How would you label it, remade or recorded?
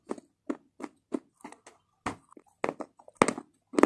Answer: recorded